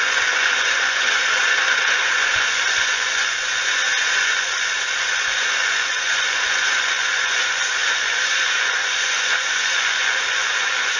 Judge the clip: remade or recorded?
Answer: remade